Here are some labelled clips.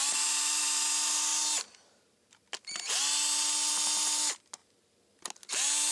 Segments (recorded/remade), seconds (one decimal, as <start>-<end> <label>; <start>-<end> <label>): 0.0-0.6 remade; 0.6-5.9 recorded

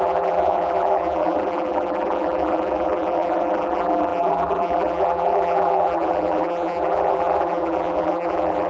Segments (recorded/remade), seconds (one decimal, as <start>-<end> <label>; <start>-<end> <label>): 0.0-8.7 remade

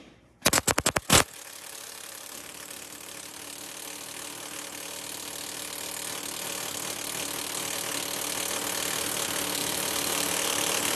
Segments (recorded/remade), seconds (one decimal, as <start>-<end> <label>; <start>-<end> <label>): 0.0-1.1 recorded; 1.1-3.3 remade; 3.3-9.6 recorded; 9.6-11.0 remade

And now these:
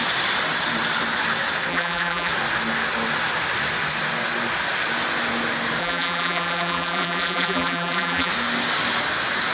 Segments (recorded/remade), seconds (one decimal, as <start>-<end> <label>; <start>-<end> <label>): 0.0-1.7 recorded; 1.7-2.3 remade; 2.3-5.8 recorded; 5.8-8.3 remade; 8.3-9.5 recorded

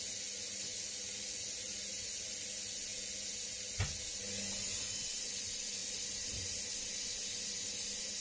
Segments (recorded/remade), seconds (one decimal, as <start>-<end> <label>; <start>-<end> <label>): 0.0-8.2 recorded